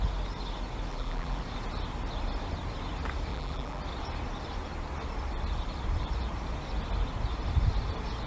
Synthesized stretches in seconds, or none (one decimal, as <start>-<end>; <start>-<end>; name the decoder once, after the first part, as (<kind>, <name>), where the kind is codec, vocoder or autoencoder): 0.9-1.4 (vocoder, BigVGAN v2); 3.3-3.8